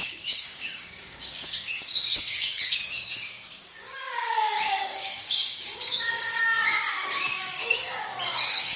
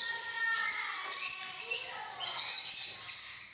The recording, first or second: second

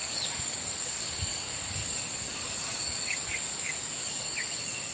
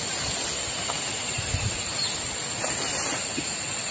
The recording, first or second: second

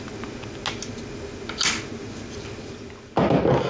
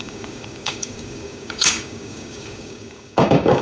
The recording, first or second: first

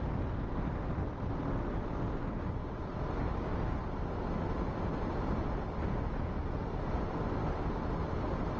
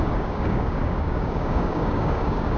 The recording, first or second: first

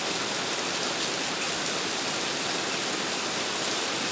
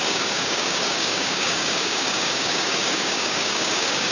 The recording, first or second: first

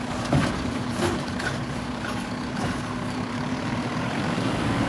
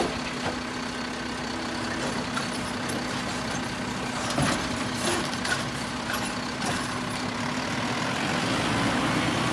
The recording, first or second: second